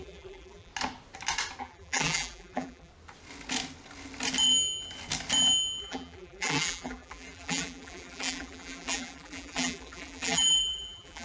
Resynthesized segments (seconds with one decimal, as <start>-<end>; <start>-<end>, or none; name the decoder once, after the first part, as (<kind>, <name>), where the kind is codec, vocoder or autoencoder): 0.0-0.7 (vocoder, BigVGAN v2); 1.6-2.9; 5.8-11.2